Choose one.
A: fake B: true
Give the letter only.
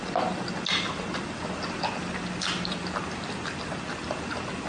B